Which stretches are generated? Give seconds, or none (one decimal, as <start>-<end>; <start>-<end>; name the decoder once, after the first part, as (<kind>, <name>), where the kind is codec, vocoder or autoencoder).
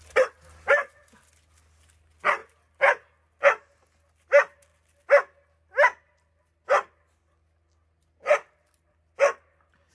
none